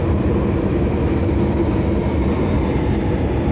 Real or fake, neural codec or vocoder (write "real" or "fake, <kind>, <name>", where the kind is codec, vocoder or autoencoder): real